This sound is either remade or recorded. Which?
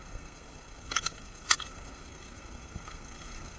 remade